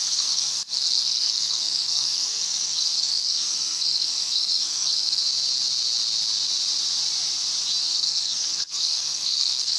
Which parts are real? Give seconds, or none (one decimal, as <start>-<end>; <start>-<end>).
5.2-7.8